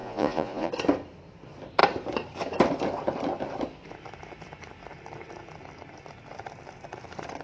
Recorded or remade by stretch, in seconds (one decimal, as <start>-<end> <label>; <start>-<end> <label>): 0.0-0.7 remade; 0.7-7.4 recorded